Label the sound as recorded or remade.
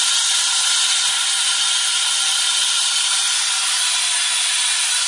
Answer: recorded